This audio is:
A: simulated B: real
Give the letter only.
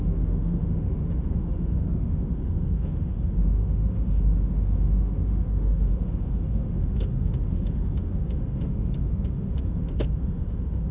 A